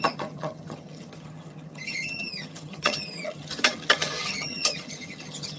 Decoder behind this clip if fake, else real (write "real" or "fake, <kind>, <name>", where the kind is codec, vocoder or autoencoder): fake, vocoder, HiFi-GAN